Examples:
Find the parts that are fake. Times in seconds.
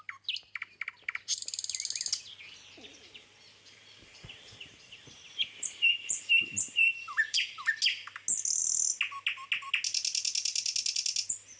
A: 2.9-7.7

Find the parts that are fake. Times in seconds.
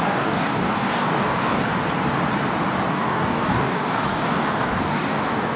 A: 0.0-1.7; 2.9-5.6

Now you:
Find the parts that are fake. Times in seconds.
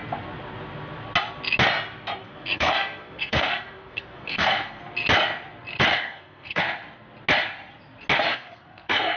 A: 2.2-4.8; 5.9-6.6; 8.3-9.2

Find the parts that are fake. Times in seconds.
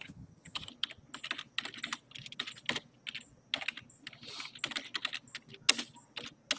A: 0.0-0.7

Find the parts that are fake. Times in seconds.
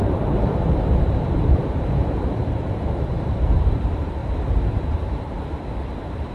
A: 0.0-4.2; 4.7-6.3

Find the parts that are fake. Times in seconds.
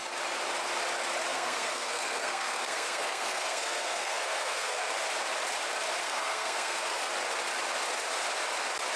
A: 1.3-4.9; 6.0-7.1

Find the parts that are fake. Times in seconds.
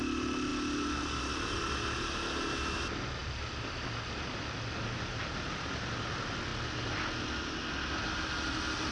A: none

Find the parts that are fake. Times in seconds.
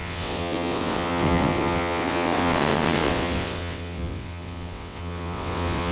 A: 0.0-5.9